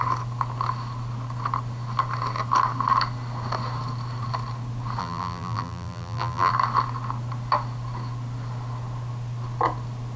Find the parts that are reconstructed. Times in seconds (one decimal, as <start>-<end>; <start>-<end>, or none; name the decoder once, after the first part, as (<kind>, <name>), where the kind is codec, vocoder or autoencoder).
5.0-6.5 (vocoder, BigVGAN v2)